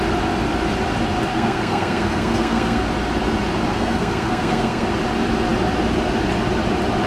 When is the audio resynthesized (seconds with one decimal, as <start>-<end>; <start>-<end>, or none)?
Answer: 1.3-2.9; 3.7-4.9